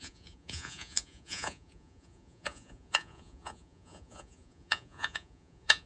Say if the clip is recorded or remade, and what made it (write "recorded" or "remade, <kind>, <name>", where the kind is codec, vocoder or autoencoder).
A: remade, vocoder, Vocos